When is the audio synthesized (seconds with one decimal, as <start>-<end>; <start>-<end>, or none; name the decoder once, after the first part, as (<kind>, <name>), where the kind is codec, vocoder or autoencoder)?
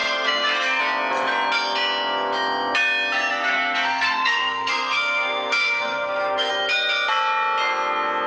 0.0-0.8 (codec, SNAC); 3.3-6.5